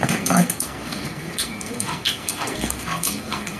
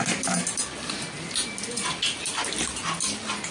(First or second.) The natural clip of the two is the second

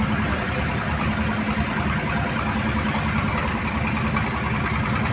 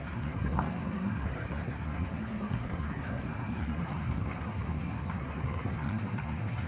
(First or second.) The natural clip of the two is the first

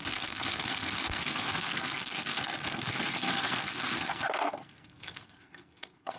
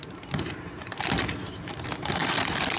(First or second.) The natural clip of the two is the second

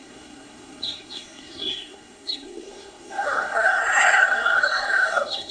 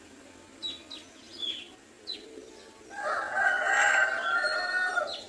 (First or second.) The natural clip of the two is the second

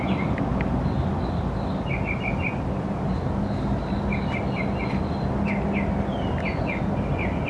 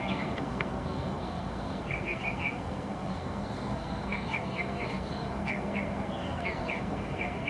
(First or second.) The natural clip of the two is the first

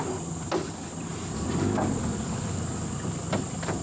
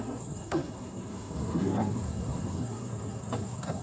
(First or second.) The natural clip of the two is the first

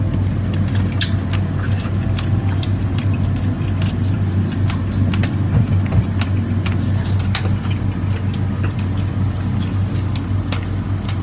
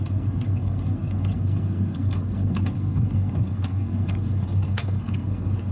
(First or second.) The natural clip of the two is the first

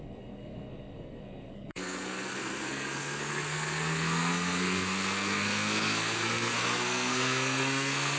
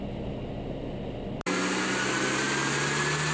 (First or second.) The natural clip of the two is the second